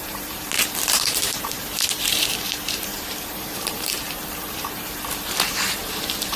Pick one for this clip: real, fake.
fake